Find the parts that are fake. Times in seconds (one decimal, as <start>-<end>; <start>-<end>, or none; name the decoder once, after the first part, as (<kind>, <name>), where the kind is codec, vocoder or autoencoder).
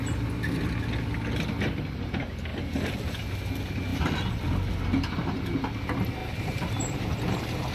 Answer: 2.5-3.2 (vocoder, BigVGAN v2); 6.2-7.7